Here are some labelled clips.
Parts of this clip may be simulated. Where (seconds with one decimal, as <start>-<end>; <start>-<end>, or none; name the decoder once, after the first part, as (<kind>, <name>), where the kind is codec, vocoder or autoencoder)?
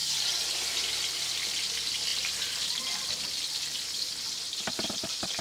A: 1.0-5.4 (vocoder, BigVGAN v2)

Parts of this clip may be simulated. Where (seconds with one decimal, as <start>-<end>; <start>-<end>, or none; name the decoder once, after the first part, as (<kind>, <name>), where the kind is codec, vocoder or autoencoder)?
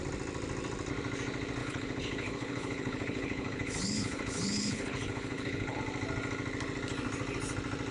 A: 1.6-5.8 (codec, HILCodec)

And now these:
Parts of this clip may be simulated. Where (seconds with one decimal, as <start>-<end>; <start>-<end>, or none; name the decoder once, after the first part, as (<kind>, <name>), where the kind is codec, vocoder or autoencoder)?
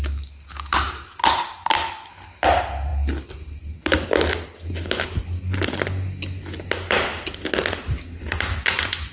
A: 8.2-9.1 (vocoder, Vocos)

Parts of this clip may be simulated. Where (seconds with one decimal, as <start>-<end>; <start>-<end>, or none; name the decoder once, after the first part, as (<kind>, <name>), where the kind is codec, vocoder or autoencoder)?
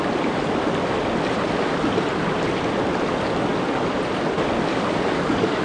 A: 4.7-5.6 (codec, DAC)